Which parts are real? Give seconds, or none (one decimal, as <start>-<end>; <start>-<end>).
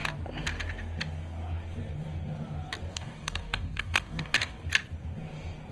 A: 0.0-2.9; 4.6-5.7